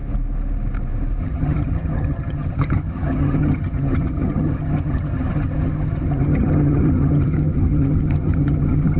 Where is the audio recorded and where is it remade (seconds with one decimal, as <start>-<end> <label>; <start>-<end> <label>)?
0.0-1.2 recorded; 1.2-9.0 remade